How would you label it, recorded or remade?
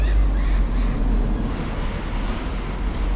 recorded